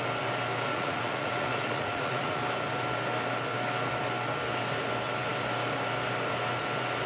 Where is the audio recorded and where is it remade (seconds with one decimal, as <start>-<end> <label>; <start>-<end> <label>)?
0.0-0.7 recorded; 0.7-2.4 remade; 2.4-7.1 recorded

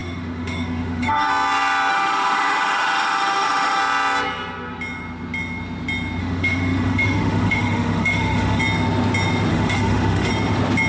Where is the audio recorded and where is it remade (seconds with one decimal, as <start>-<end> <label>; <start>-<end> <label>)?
0.0-1.3 remade; 1.3-1.9 recorded; 1.9-3.8 remade; 3.8-6.2 recorded; 6.2-8.6 remade; 8.6-9.5 recorded; 9.5-10.3 remade; 10.3-10.9 recorded

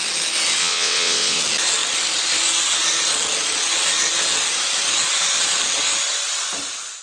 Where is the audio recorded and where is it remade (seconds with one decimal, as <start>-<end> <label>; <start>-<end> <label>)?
0.0-0.6 recorded; 0.6-1.4 remade; 1.4-7.0 recorded

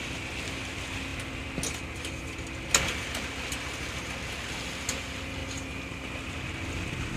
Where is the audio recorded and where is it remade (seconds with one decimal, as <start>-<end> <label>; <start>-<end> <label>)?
0.0-7.2 recorded

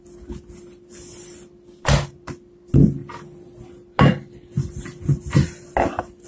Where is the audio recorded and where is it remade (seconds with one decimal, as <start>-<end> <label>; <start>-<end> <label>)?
0.0-6.3 recorded